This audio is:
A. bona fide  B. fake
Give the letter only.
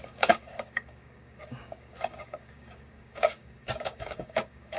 B